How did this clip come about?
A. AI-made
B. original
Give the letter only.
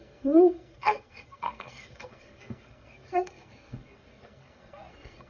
A